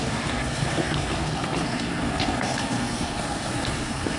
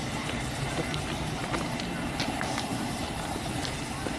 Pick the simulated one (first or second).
first